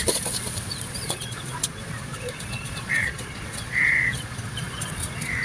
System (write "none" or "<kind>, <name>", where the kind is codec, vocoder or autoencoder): vocoder, Vocos